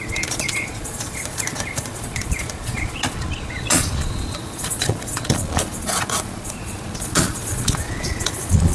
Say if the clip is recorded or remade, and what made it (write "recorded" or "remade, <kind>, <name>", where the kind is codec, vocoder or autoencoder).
remade, vocoder, Vocos